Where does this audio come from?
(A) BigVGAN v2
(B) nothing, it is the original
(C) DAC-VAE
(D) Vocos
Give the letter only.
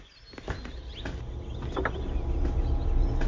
B